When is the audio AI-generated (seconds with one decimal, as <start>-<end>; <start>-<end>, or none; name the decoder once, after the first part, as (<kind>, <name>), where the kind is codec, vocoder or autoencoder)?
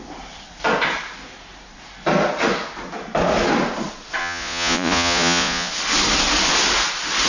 4.2-5.7 (vocoder, Vocos)